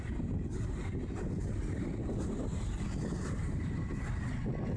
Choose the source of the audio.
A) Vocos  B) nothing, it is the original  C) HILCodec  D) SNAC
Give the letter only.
B